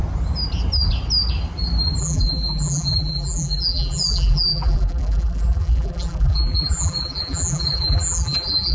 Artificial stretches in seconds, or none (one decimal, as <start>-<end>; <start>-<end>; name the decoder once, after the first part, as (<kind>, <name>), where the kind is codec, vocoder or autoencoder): 2.0-8.7 (vocoder, BigVGAN v2)